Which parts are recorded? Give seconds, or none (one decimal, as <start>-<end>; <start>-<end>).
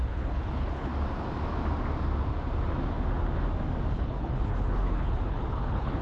0.9-3.9